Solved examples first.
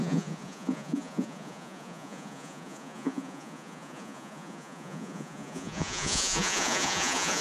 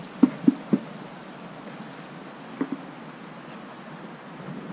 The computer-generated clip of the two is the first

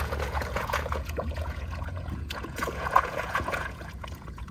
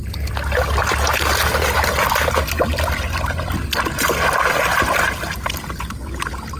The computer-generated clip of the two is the first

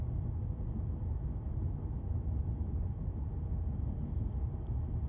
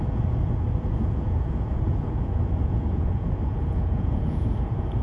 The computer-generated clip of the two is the second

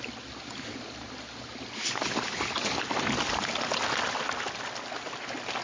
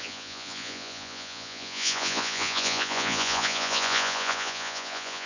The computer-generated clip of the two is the second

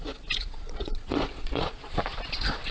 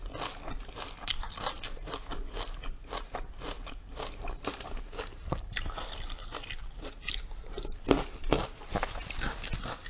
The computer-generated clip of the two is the first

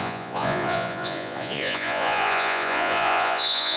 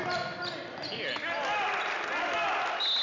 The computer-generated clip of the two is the first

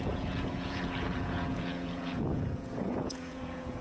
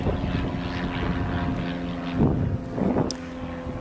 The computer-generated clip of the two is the first